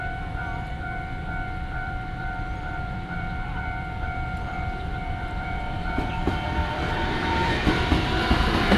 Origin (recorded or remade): remade